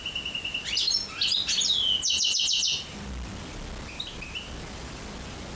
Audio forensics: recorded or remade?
recorded